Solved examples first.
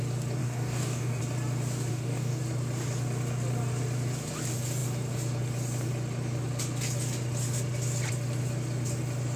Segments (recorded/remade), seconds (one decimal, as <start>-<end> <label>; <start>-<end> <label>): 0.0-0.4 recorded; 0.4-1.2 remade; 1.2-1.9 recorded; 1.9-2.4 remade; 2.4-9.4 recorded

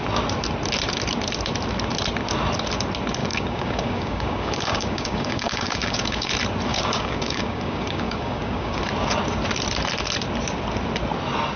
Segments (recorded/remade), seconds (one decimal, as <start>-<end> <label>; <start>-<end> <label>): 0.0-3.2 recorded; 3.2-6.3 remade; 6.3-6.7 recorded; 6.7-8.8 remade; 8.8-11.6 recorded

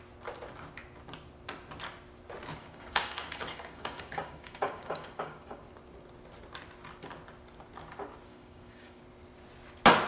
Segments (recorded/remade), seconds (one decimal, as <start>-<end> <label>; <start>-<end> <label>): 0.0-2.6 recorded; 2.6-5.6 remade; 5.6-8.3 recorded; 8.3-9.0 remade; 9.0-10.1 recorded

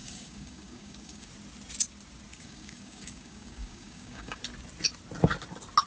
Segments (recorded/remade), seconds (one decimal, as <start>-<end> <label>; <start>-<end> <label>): 0.0-1.3 remade; 1.3-2.3 recorded; 2.3-4.4 remade; 4.4-5.9 recorded

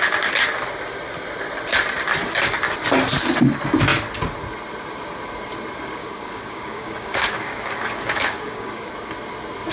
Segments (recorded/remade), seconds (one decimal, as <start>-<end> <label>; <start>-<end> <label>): 0.0-5.8 recorded; 5.8-8.9 remade; 8.9-9.7 recorded

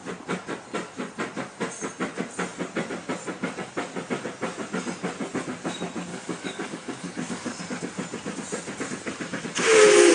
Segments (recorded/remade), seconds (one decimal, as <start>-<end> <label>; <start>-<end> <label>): 0.0-6.1 recorded; 6.1-7.6 remade; 7.6-10.1 recorded

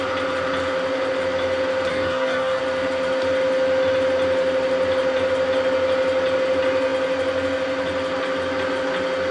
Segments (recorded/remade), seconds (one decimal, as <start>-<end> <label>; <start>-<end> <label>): 0.0-1.9 recorded; 1.9-2.6 remade; 2.6-9.3 recorded

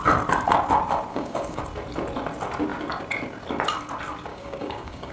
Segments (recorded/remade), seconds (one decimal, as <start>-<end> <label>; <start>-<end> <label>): 0.0-1.1 recorded; 1.1-1.6 remade; 1.6-4.3 recorded; 4.3-5.1 remade